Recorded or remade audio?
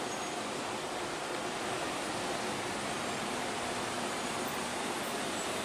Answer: recorded